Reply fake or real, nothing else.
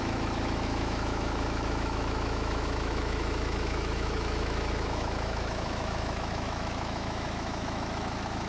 fake